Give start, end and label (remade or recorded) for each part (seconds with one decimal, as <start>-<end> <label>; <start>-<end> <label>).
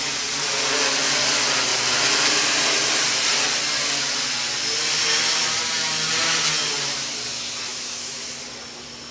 0.0-7.7 recorded; 7.7-8.3 remade; 8.3-9.1 recorded